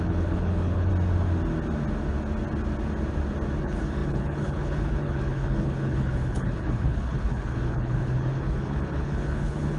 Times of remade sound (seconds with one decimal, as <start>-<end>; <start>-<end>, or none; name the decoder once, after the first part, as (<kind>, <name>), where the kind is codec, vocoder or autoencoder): 0.0-0.9 (codec, HILCodec); 3.6-9.8